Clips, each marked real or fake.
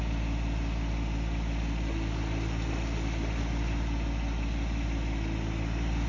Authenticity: real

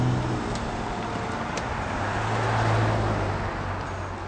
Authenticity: real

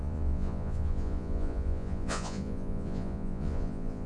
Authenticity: fake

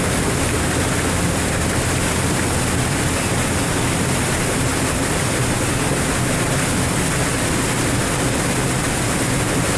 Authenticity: real